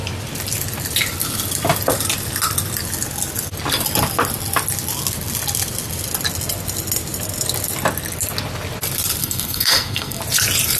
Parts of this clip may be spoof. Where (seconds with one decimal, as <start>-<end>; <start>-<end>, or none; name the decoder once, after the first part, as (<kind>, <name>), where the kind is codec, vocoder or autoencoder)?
9.2-10.2 (codec, SNAC)